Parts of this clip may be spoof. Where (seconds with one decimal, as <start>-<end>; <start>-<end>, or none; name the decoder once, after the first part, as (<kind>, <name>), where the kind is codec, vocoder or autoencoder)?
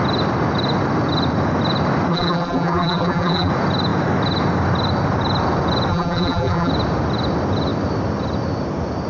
2.1-3.5 (vocoder, BigVGAN v2); 5.9-6.7